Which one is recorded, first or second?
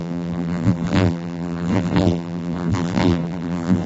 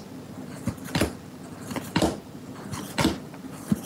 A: second